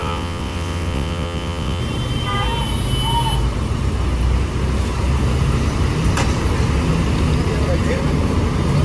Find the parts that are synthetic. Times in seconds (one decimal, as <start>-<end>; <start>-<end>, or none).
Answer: 0.0-1.8